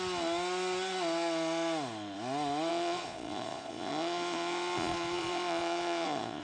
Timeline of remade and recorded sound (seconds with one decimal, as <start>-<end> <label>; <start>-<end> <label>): 0.0-2.7 recorded; 2.7-6.4 remade